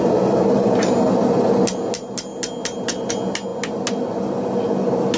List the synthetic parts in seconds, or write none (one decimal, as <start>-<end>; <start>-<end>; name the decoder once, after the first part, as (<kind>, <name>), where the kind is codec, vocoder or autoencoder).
none